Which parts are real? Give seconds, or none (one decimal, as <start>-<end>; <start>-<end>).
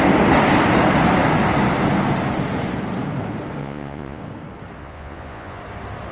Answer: 0.0-3.6; 4.2-4.8; 5.6-6.1